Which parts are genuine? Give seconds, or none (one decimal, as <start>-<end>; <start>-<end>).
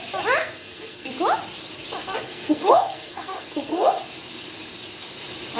0.0-0.4; 1.1-2.0; 4.0-5.6